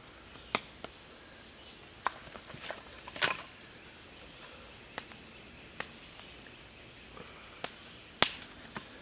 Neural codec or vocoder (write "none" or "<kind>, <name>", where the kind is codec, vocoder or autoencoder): none